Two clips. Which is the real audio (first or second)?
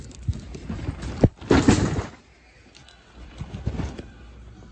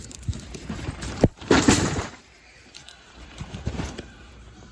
first